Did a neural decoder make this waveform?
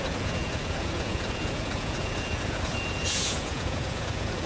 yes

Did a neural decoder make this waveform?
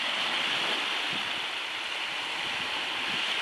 no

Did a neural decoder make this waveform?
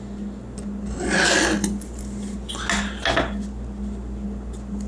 no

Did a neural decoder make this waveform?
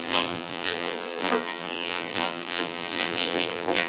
yes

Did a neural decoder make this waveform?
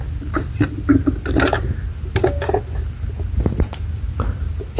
no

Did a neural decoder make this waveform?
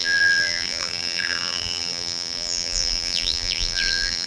yes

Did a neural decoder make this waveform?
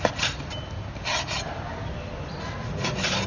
no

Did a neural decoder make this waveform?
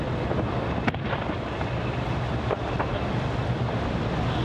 no